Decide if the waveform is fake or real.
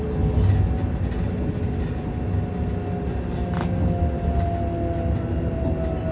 real